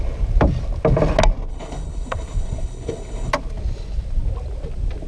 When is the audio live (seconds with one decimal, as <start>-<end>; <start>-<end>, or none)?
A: 0.0-1.5; 3.3-5.1